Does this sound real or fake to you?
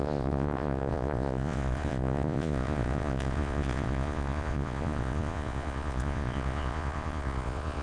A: fake